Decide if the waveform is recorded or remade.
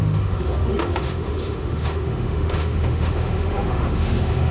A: remade